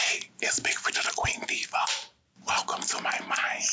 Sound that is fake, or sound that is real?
fake